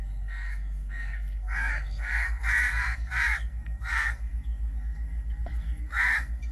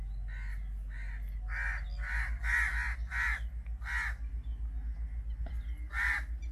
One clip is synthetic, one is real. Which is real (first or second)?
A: second